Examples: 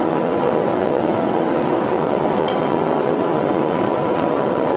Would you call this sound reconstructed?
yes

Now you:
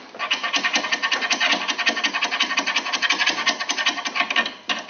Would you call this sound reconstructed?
no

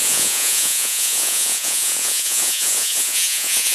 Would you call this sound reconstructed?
yes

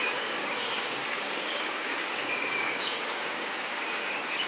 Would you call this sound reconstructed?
yes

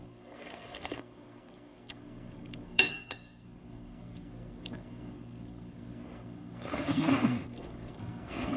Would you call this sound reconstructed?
yes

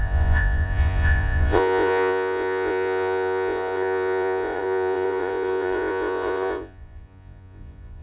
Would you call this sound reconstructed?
yes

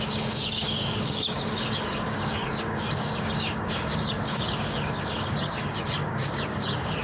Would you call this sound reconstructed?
yes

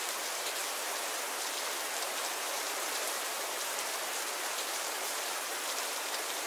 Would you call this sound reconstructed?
yes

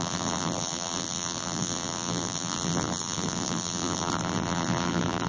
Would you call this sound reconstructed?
yes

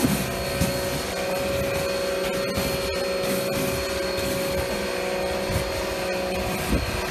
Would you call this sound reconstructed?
no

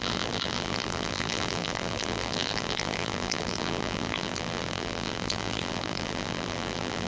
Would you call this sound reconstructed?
yes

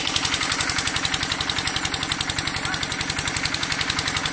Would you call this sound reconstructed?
no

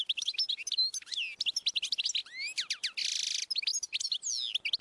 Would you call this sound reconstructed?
no